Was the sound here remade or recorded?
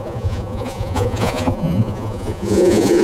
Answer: remade